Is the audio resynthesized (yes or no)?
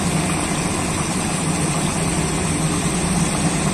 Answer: no